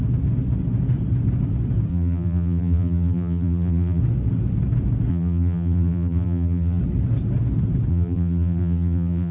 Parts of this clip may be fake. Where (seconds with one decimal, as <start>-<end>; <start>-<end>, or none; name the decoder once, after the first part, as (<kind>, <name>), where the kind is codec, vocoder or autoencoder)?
1.9-4.0 (vocoder, BigVGAN v2); 5.1-6.8; 7.9-9.3